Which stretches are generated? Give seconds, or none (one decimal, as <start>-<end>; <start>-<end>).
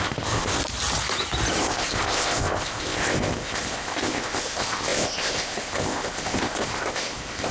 0.0-0.6; 1.6-7.5